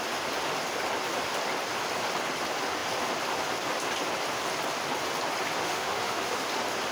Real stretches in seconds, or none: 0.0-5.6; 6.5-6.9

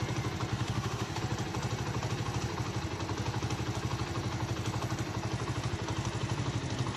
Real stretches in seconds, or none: 0.0-0.5; 1.2-7.0

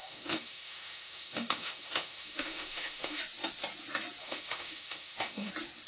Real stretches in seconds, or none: 3.2-4.2; 5.5-5.9

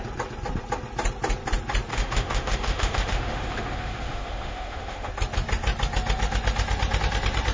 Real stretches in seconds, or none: 0.0-1.9; 5.1-7.5